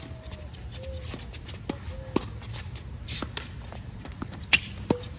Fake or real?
real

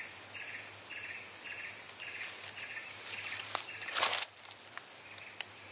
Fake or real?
real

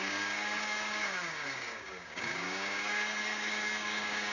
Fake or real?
fake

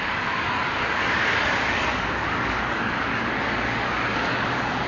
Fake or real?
fake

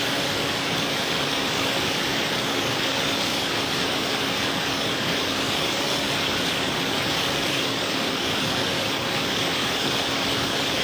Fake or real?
fake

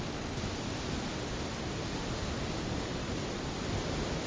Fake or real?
real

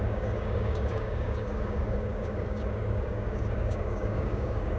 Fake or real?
fake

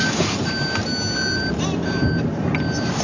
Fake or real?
real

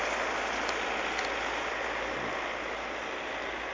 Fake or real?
real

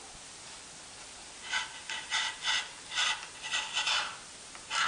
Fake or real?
real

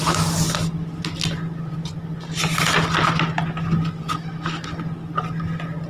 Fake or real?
real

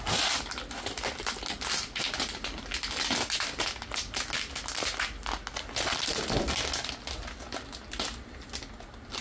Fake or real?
real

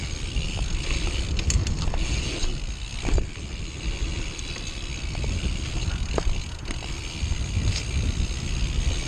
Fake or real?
real